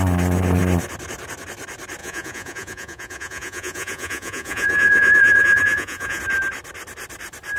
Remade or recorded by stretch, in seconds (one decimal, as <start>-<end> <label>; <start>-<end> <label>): 0.0-2.0 recorded; 2.0-6.2 remade; 6.2-7.6 recorded